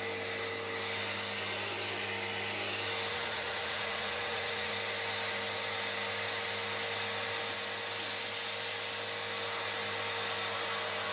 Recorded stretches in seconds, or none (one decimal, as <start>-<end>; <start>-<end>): 0.0-3.1; 4.7-11.1